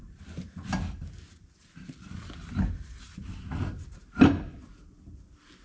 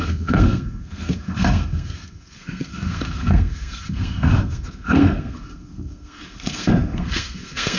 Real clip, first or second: first